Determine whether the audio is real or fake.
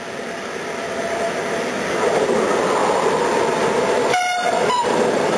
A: fake